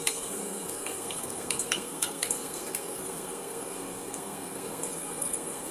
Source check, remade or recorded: remade